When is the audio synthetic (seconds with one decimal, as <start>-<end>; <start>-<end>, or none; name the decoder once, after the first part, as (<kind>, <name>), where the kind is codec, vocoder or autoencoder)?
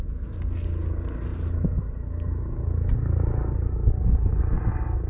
none